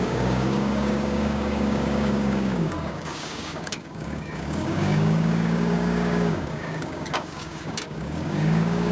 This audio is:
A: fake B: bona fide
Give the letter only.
A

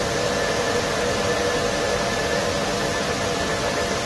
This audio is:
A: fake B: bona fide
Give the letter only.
B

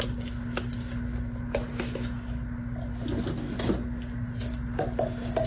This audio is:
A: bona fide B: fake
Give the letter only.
A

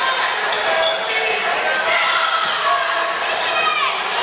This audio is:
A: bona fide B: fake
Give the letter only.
A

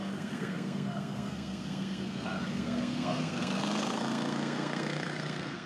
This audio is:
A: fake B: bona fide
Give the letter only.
A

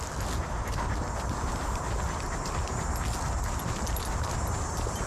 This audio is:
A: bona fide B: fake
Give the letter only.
A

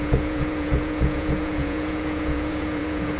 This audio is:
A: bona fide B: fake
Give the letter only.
B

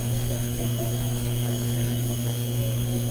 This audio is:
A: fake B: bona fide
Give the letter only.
A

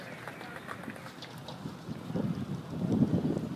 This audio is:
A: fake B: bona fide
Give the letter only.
B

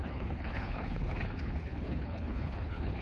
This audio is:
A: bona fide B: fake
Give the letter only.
B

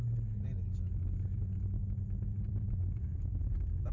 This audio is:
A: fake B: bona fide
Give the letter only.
B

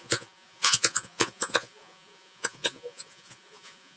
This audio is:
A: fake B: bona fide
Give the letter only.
A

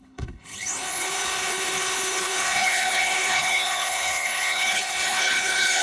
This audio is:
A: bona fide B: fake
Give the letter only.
B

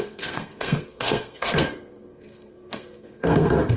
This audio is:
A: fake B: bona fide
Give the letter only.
A